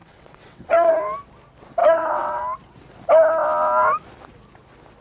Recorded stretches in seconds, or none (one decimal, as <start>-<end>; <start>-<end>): 0.9-1.8; 2.4-5.0